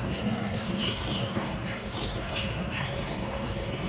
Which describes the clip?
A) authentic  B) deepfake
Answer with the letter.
B